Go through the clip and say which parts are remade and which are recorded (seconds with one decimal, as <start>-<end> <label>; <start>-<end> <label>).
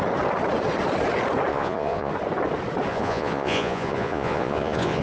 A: 0.0-1.5 recorded; 1.5-2.1 remade; 2.1-2.9 recorded; 2.9-5.0 remade